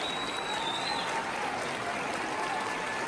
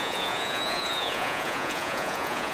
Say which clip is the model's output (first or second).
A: second